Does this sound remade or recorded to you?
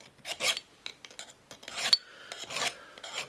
recorded